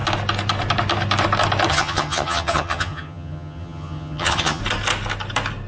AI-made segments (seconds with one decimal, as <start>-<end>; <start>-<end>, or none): 1.7-4.6